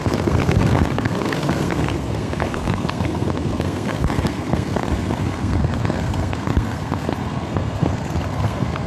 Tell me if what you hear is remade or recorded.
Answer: remade